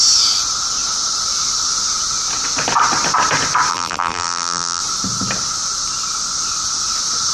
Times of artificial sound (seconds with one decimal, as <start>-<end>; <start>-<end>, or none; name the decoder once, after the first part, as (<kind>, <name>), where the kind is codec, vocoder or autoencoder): 3.7-4.8 (vocoder, BigVGAN v2)